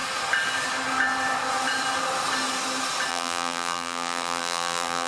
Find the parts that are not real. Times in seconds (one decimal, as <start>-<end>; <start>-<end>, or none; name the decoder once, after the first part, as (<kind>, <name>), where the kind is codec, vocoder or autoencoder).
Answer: 3.1-5.1 (vocoder, BigVGAN v2)